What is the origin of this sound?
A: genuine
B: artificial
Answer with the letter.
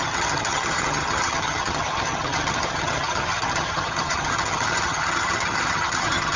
B